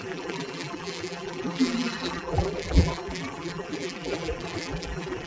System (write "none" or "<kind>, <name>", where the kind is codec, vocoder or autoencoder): vocoder, BigVGAN v2